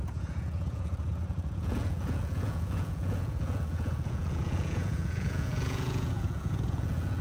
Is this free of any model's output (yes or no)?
no